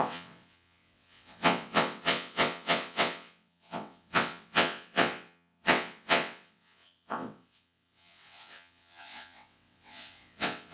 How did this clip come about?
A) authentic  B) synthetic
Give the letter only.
B